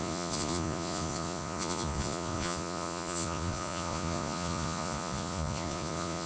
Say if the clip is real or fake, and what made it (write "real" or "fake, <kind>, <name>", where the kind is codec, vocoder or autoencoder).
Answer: fake, vocoder, Vocos